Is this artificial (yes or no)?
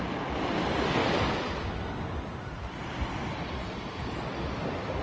no